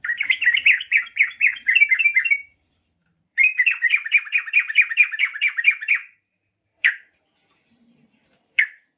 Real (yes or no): no